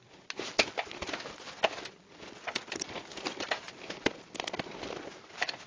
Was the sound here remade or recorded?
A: recorded